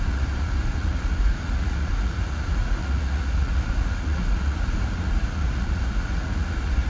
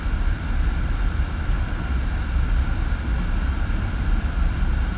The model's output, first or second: first